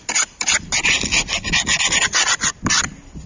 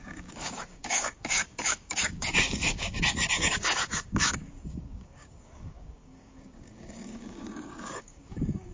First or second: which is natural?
first